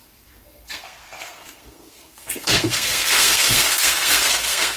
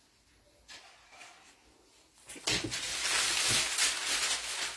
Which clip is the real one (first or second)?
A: second